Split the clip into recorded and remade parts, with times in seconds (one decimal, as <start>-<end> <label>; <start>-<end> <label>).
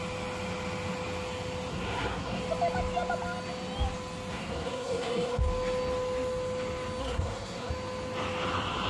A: 0.0-1.7 recorded; 1.7-2.4 remade; 2.4-4.3 recorded; 4.3-5.4 remade; 5.4-7.0 recorded; 7.0-7.7 remade; 7.7-8.9 recorded